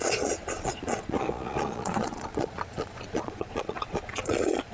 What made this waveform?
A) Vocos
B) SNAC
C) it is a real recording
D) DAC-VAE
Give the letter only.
A